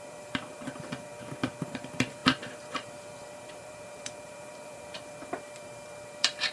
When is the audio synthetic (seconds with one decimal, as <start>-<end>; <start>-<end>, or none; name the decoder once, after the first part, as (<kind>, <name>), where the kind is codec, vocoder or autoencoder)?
0.0-1.1 (vocoder, BigVGAN v2); 1.6-6.5